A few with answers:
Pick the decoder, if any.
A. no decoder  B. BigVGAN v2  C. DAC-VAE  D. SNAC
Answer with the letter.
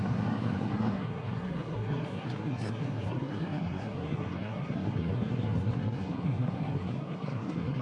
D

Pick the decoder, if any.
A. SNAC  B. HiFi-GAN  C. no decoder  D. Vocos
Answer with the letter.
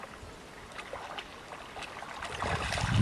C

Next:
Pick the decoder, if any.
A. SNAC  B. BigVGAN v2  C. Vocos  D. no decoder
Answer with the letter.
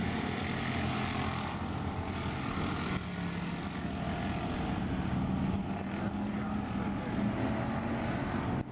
D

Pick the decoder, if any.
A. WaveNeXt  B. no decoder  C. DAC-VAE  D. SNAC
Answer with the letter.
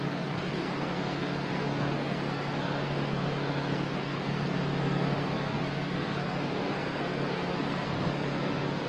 D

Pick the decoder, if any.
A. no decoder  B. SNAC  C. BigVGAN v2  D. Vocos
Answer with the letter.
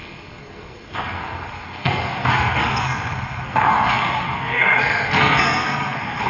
B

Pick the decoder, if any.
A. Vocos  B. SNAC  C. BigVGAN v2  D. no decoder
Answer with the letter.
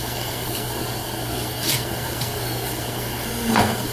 B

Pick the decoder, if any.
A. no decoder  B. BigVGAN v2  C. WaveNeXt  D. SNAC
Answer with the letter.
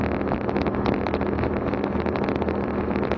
A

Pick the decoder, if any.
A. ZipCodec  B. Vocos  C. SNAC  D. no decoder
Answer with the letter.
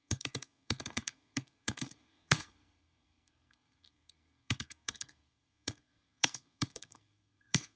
C